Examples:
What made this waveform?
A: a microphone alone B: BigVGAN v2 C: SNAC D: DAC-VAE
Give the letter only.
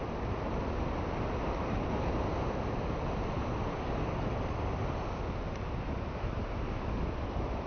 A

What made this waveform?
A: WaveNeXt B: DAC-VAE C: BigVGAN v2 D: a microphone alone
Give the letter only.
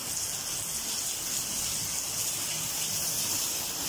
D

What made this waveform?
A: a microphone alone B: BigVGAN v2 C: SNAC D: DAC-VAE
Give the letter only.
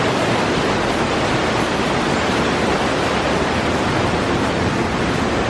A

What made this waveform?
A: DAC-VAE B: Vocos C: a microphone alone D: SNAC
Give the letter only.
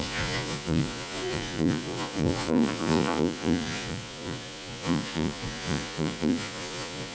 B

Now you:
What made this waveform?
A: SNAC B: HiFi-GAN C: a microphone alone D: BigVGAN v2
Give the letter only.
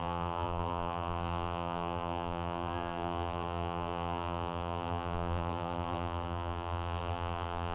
D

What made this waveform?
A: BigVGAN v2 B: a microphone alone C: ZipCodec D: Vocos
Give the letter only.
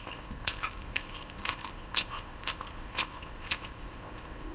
C